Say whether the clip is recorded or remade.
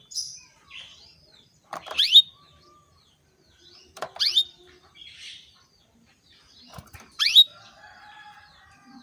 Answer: remade